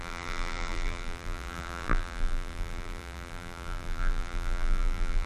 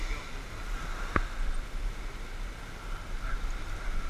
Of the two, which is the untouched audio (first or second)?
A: second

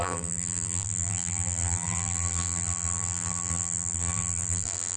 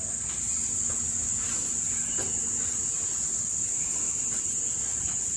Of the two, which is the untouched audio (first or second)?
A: second